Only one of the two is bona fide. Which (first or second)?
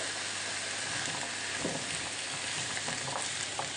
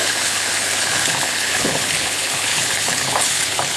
first